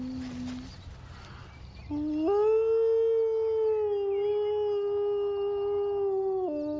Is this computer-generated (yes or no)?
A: no